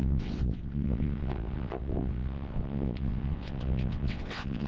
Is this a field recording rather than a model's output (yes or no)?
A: no